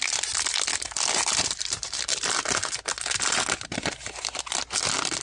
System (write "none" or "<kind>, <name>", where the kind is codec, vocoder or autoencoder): none